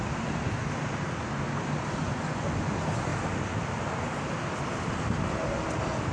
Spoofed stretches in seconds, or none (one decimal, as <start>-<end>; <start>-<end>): 2.0-2.7